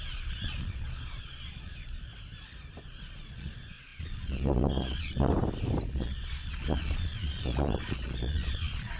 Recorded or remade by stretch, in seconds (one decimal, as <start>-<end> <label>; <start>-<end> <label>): 0.0-2.1 remade; 2.1-2.8 recorded; 2.8-5.3 remade; 5.3-5.9 recorded; 5.9-9.0 remade